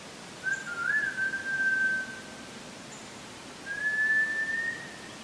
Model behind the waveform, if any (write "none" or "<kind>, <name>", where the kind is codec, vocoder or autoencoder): none